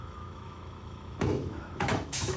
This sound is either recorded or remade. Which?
remade